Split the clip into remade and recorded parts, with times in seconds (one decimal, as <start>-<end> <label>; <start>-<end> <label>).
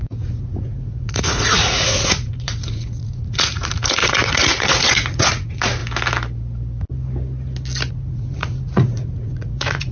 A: 0.0-5.8 remade; 5.8-7.9 recorded; 7.9-9.9 remade